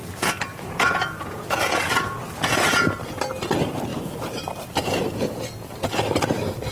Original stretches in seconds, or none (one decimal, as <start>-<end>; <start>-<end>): 2.2-6.7